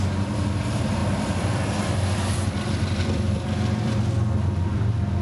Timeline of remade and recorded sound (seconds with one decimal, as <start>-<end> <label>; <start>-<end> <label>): 0.0-1.0 recorded; 1.0-4.1 remade; 4.1-5.2 recorded